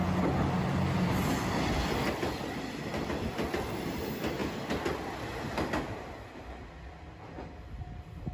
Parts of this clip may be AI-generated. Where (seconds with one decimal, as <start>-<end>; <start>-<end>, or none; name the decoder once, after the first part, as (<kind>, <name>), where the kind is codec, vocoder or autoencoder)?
none